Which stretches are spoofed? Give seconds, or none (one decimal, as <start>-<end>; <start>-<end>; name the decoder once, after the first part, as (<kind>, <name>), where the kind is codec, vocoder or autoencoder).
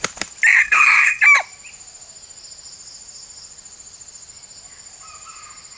0.6-1.2 (codec, SNAC)